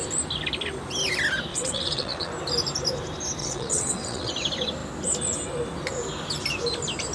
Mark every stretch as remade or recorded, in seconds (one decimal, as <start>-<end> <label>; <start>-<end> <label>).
0.0-1.5 recorded; 1.5-2.3 remade; 2.3-3.4 recorded; 3.4-4.3 remade; 4.3-7.1 recorded